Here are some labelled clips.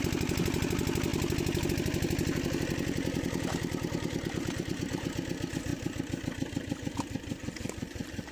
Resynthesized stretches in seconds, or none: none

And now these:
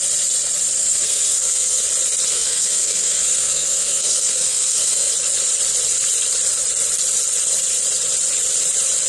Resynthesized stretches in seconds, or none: 0.8-1.8; 2.3-5.1